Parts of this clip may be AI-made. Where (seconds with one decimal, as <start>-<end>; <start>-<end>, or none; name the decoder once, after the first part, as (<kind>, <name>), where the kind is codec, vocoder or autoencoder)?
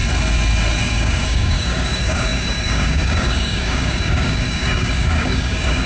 0.8-5.9 (codec, DAC)